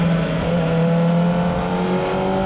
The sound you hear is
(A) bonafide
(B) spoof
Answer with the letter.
A